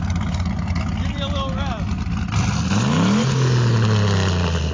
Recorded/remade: recorded